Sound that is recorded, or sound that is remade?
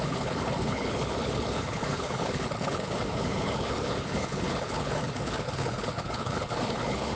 remade